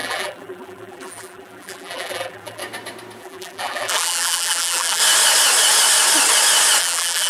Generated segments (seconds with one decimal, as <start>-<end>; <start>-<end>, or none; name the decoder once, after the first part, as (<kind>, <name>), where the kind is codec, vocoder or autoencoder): 0.0-2.6 (vocoder, BigVGAN v2); 3.2-5.0; 6.8-7.3